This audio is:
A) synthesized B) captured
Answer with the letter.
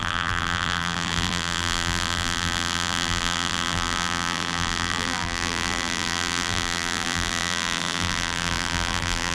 A